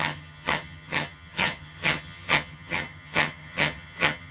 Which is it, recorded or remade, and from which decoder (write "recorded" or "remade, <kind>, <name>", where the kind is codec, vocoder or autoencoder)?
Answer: remade, vocoder, HiFi-GAN